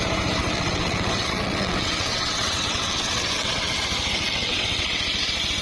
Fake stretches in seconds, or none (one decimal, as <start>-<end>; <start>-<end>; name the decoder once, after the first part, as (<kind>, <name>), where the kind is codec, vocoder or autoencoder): 0.4-3.8 (vocoder, WaveNeXt); 4.2-5.0